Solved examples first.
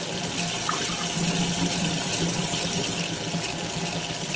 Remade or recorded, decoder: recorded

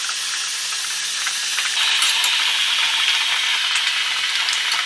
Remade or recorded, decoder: recorded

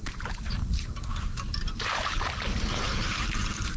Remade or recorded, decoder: remade, vocoder, BigVGAN v2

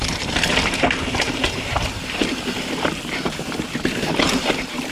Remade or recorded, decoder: remade, vocoder, BigVGAN v2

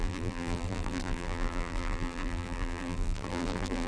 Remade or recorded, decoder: remade, vocoder, BigVGAN v2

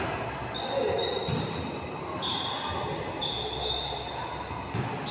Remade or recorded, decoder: recorded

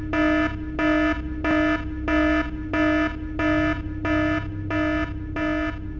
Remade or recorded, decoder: recorded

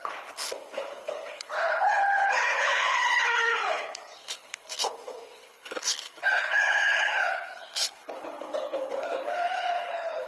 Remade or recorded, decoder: remade, codec, HILCodec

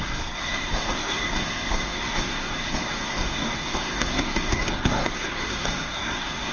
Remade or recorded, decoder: remade, codec, SNAC